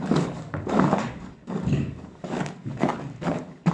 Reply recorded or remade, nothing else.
remade